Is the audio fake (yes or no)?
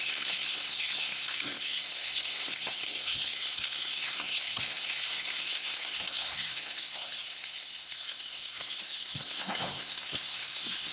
yes